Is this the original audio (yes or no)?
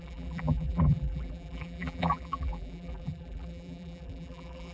no